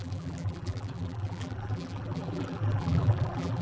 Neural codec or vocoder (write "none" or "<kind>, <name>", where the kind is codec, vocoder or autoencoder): vocoder, BigVGAN v2